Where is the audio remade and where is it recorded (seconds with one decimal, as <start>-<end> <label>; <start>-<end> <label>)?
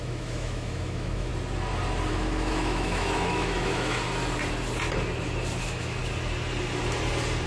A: 0.0-1.3 remade; 1.3-2.1 recorded; 2.1-4.0 remade; 4.0-5.6 recorded; 5.6-6.0 remade; 6.0-7.5 recorded